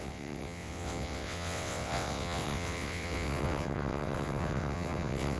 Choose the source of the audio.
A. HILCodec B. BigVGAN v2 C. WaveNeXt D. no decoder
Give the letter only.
C